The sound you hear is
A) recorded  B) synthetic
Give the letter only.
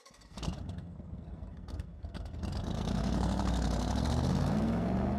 B